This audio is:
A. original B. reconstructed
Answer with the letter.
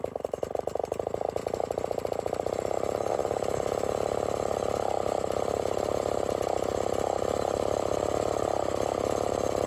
A